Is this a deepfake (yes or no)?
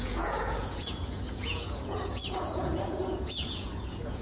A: yes